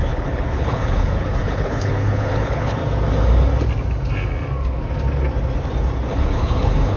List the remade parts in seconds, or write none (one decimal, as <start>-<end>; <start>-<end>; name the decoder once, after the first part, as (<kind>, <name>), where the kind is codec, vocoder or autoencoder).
0.0-2.8 (codec, HILCodec); 6.1-7.0